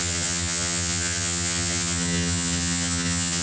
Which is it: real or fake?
fake